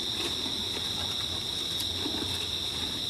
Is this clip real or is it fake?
real